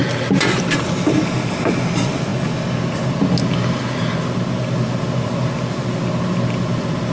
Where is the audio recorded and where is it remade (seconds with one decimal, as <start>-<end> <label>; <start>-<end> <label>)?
0.0-7.1 recorded